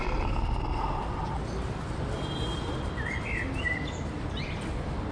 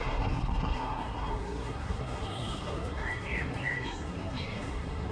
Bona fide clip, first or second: first